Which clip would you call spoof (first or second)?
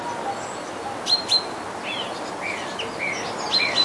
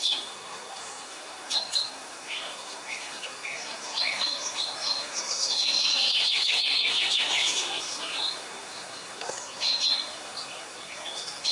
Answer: second